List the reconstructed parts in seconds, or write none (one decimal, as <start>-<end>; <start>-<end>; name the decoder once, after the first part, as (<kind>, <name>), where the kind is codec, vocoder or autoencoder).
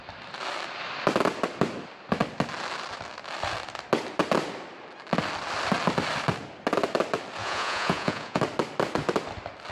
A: 7.4-8.4 (vocoder, Vocos)